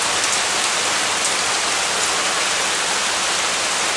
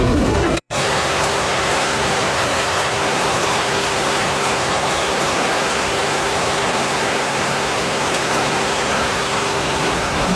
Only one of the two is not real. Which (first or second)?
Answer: second